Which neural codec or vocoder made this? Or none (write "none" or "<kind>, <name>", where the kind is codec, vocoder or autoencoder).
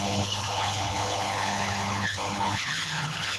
codec, HILCodec